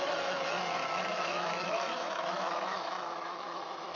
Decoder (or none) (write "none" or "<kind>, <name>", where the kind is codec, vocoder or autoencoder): autoencoder, DAC-VAE